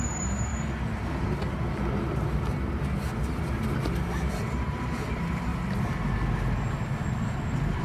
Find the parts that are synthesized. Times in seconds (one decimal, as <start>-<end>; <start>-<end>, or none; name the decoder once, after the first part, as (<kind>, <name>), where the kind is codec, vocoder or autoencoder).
0.0-0.5 (vocoder, BigVGAN v2); 4.3-5.5; 7.2-7.8